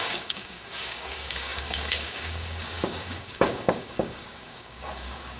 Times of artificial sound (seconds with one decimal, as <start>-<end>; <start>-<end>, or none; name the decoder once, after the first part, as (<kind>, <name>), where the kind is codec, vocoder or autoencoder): 0.0-5.4 (codec, DAC)